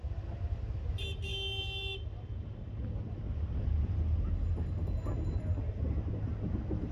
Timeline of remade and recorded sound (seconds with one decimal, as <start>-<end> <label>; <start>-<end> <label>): 0.0-6.9 recorded